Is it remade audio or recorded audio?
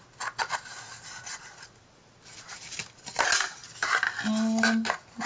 recorded